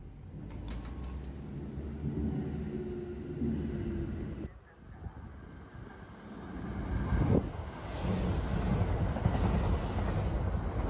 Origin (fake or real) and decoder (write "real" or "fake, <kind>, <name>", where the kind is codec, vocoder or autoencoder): real